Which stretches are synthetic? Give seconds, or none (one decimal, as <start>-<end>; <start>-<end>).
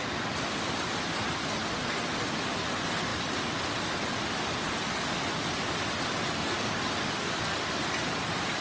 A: none